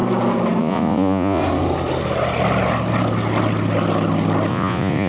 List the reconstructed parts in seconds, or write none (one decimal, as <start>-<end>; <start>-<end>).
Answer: 0.6-1.4; 4.5-5.1